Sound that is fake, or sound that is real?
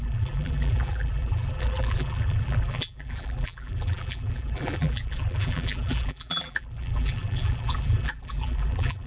fake